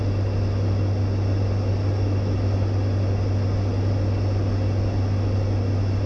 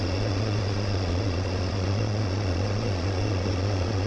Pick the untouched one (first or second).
first